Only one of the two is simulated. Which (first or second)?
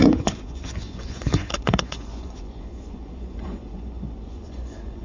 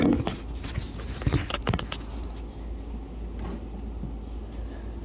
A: first